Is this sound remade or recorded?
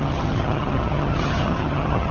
remade